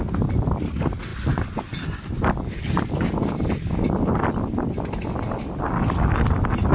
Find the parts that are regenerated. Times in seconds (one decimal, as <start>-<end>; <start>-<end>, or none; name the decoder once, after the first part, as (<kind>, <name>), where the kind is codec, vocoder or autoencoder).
none